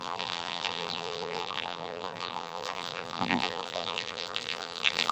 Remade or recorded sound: remade